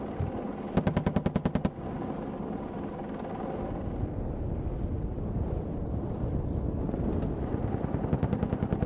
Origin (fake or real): real